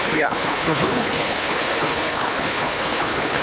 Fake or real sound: fake